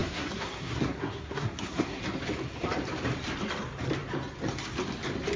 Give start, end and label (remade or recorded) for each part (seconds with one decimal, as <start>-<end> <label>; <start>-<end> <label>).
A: 0.0-2.0 remade; 2.0-5.4 recorded